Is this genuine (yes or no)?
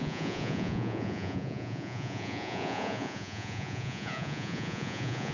no